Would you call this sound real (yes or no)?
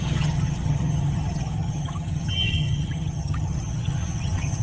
no